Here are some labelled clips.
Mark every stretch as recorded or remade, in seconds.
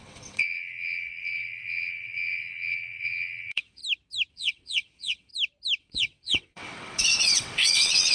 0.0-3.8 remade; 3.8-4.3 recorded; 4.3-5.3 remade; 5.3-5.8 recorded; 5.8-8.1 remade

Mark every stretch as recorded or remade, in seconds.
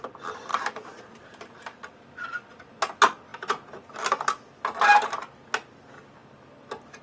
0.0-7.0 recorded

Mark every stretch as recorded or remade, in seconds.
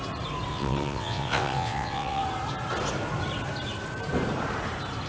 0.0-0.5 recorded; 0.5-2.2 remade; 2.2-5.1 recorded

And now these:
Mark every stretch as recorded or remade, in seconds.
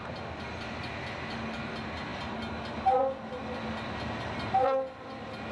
0.0-5.5 recorded